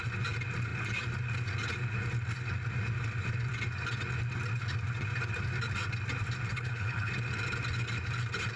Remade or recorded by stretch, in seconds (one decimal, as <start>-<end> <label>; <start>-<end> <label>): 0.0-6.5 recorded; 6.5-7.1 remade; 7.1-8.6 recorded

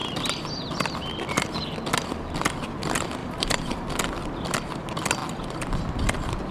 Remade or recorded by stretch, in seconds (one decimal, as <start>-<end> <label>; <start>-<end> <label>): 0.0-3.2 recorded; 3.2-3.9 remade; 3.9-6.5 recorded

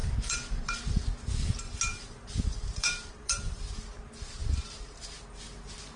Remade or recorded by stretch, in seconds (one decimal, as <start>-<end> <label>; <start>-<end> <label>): 0.0-0.8 remade; 0.8-1.9 recorded; 1.9-3.6 remade; 3.6-6.0 recorded